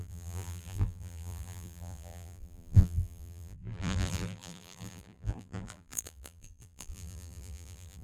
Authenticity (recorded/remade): remade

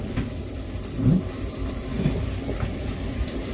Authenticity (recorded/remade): remade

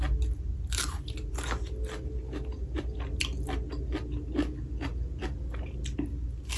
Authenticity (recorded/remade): recorded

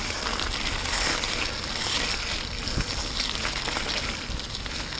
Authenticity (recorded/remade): recorded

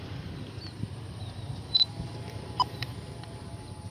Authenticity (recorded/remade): remade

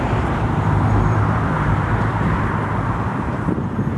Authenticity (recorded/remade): remade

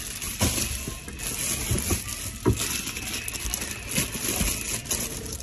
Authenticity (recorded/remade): recorded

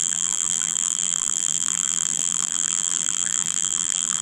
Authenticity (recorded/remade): remade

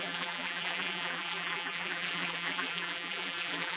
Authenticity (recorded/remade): remade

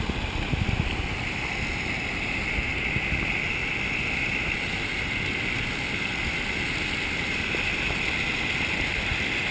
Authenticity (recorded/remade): recorded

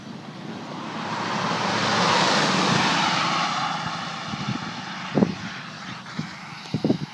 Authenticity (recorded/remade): remade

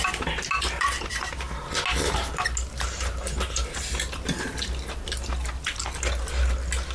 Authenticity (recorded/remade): recorded